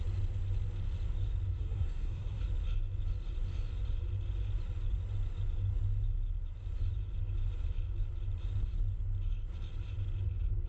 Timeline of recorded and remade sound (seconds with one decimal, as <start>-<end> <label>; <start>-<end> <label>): 0.0-1.5 recorded; 1.5-2.4 remade; 2.4-10.7 recorded